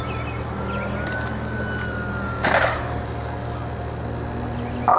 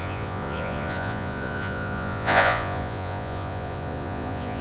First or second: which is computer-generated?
second